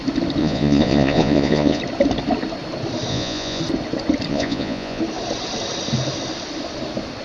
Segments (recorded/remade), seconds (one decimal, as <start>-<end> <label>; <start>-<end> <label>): 0.0-0.4 recorded; 0.4-1.8 remade; 1.8-3.1 recorded; 3.1-3.6 remade; 3.6-4.3 recorded; 4.3-5.0 remade; 5.0-7.2 recorded